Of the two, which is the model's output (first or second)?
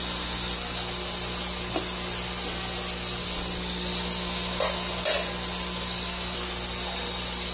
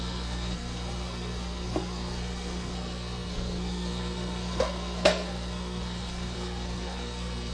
second